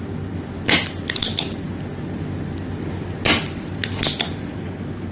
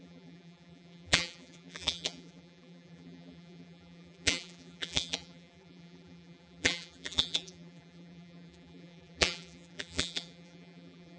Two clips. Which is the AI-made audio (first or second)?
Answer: second